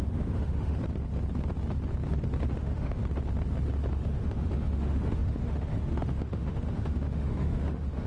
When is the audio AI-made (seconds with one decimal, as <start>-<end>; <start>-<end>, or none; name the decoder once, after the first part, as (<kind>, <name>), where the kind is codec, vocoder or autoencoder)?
0.0-0.8 (autoencoder, DAC-VAE); 2.5-3.0; 3.9-8.1